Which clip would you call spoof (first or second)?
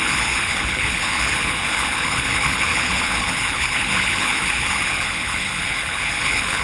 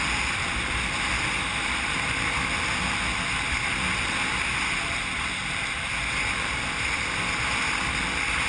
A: first